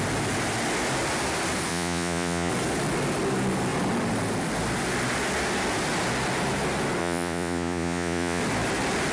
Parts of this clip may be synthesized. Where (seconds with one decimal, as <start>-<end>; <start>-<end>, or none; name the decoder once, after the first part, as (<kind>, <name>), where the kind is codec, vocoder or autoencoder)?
1.7-2.5 (vocoder, Vocos); 7.0-8.4